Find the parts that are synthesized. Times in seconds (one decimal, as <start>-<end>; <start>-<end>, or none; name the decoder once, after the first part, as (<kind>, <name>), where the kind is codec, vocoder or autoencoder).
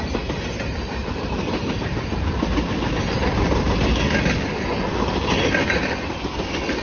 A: 1.0-2.5 (vocoder, BigVGAN v2)